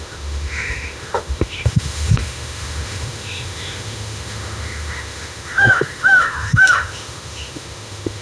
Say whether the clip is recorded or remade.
remade